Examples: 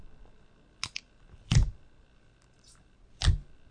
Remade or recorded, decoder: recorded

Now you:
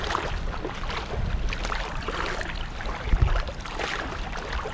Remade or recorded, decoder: recorded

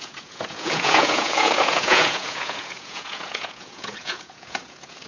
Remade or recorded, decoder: remade, vocoder, Vocos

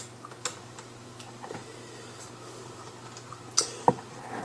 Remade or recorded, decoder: recorded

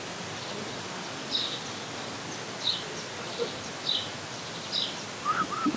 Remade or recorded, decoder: recorded